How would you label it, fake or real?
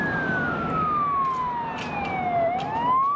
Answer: real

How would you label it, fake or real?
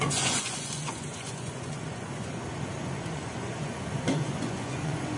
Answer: fake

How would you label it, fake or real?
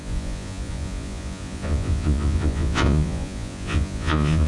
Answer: fake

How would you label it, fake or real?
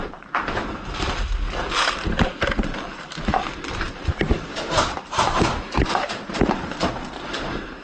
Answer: real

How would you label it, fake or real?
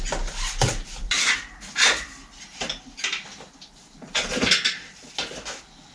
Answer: real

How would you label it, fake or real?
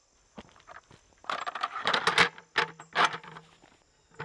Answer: real